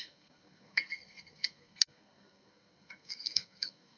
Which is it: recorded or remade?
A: remade